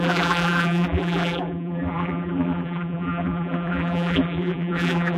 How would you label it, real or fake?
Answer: fake